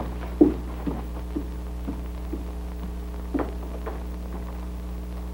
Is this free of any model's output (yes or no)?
yes